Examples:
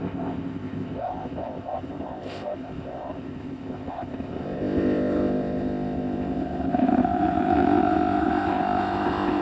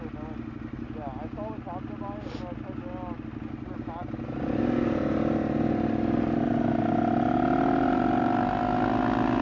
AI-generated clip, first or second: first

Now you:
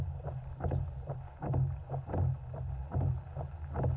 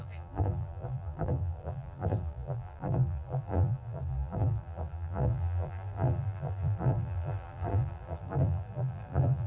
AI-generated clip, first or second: second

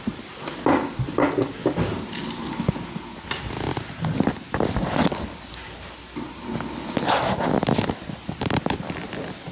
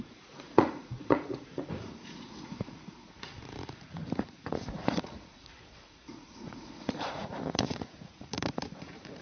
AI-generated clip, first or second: second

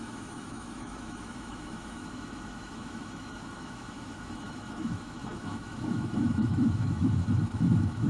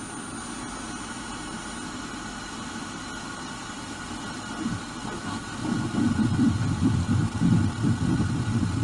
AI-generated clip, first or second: first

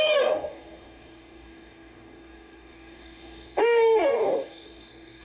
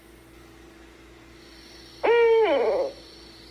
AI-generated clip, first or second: first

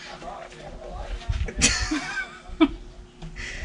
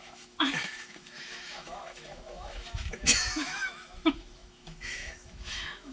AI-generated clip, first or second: second